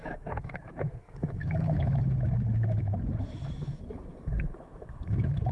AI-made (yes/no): yes